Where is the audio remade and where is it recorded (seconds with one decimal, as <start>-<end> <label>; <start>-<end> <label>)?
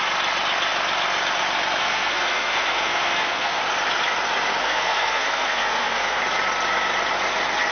0.0-1.8 recorded; 1.8-3.6 remade; 3.6-4.6 recorded; 4.6-6.2 remade; 6.2-7.7 recorded